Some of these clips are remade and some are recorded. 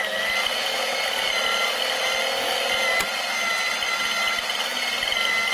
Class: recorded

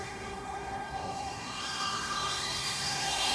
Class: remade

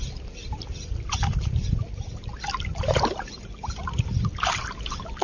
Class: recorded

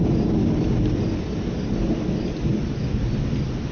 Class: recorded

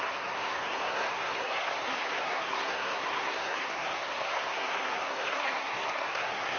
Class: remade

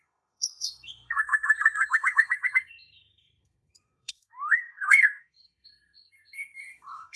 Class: remade